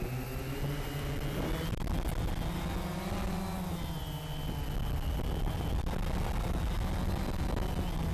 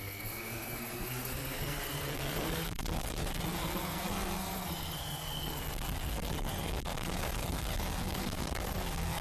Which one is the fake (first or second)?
second